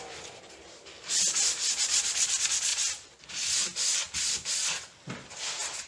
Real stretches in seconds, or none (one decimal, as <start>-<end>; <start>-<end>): 0.0-2.7; 3.2-5.9